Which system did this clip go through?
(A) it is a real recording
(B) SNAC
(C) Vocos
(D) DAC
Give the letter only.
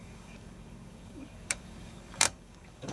D